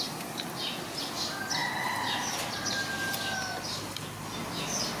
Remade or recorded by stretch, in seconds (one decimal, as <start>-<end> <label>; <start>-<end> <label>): 0.0-5.0 recorded